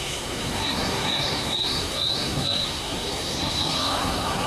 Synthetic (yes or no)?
yes